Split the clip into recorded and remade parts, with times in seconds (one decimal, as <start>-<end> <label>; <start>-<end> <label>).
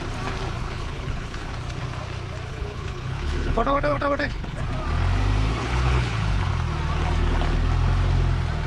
0.0-0.6 recorded; 0.6-1.5 remade; 1.5-2.5 recorded; 2.5-4.6 remade; 4.6-5.6 recorded; 5.6-6.5 remade; 6.5-8.7 recorded